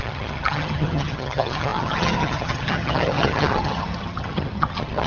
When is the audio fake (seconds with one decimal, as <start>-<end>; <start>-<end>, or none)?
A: 0.0-5.1